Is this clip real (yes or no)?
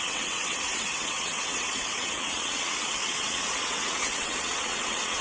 no